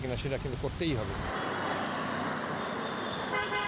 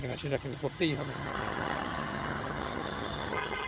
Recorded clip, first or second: first